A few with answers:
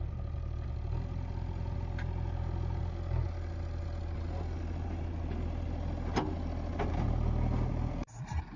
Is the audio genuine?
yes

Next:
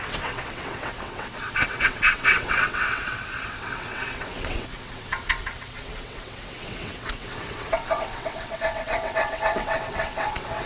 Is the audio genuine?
no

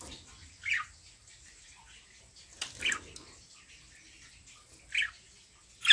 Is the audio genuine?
yes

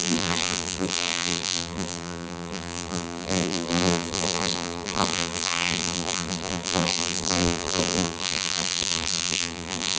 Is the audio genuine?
no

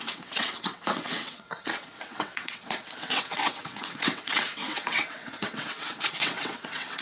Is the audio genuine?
no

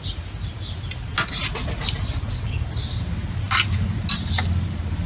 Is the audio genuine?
yes